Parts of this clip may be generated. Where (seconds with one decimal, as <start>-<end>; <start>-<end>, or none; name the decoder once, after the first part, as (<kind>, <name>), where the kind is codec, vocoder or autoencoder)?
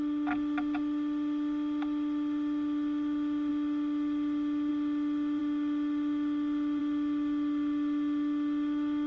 none